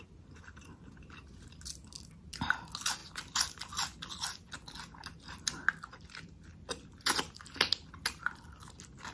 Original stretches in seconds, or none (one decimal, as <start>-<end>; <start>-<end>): 0.0-9.1